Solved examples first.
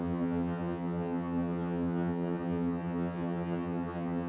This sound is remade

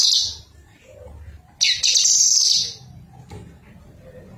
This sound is recorded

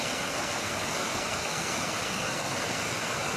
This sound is remade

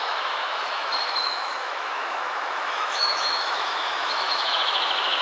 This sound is remade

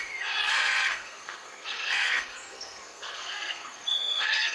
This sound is remade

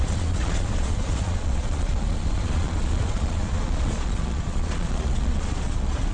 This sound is remade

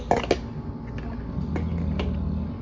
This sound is recorded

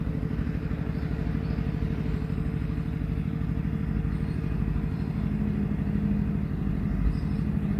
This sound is recorded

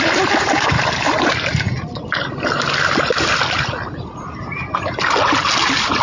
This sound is recorded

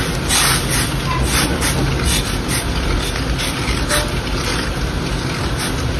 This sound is recorded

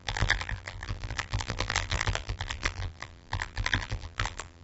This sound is remade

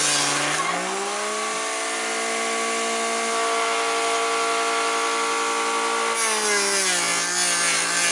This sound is recorded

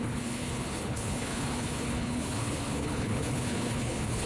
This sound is remade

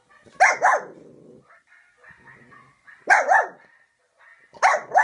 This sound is recorded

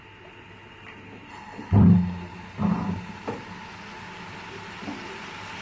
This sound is recorded